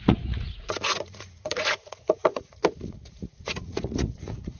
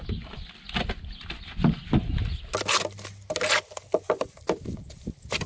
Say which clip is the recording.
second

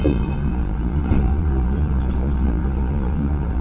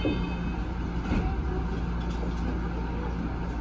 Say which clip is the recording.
second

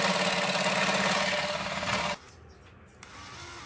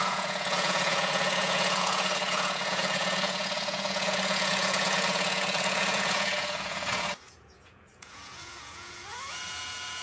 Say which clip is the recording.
first